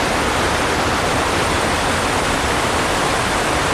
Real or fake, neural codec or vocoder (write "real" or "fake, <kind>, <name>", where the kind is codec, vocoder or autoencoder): real